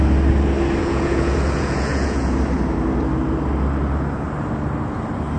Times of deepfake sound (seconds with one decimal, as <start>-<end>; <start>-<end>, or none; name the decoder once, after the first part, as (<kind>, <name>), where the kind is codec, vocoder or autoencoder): 0.8-2.3 (vocoder, Vocos)